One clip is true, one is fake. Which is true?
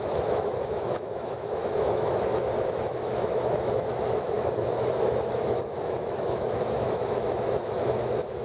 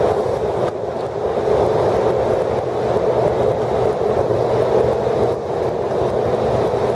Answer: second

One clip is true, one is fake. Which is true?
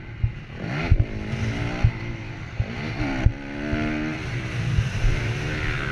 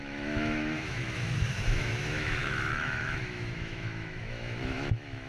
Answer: first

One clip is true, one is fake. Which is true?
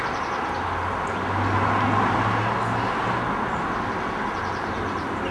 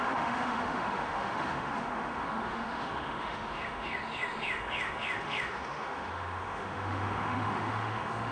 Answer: first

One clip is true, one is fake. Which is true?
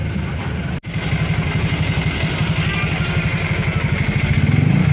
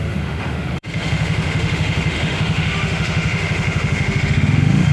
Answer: first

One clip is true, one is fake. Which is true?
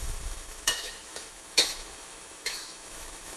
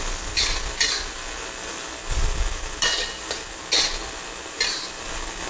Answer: second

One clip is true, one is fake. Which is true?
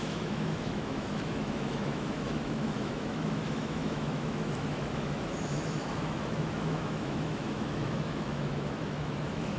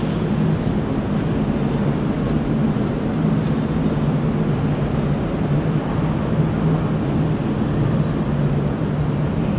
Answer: second